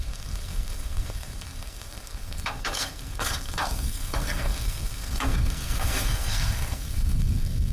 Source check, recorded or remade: remade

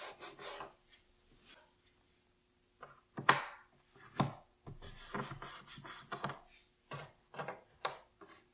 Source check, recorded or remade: recorded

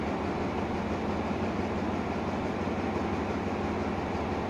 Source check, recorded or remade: recorded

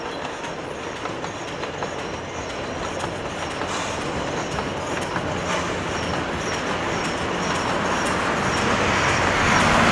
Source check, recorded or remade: recorded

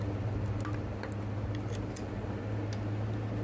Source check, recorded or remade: recorded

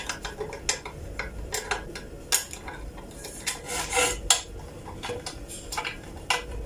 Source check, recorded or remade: recorded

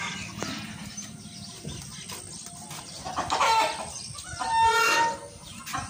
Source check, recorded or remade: recorded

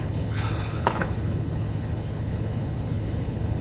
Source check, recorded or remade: remade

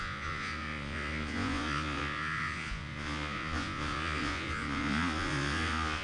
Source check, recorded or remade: remade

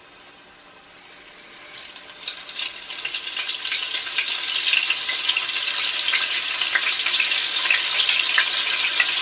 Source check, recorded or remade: recorded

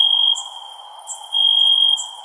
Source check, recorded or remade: recorded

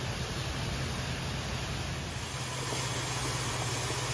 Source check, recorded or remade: recorded